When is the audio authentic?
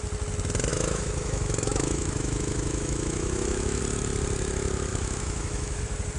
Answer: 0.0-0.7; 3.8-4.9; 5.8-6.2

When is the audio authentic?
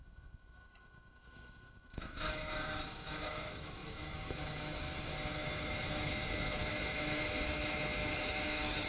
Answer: none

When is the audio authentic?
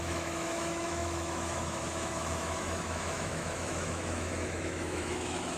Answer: none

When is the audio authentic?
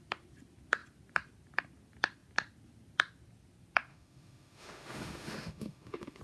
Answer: 0.0-3.9